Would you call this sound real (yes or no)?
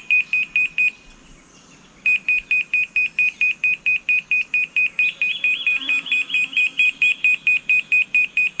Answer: no